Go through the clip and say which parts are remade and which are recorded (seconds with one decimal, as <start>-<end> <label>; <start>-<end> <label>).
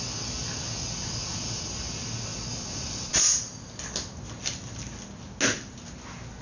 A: 0.0-6.4 recorded